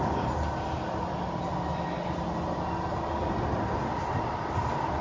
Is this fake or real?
real